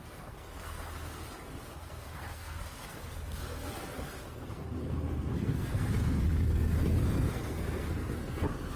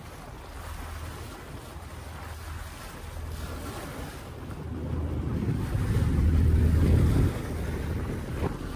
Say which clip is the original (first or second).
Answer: second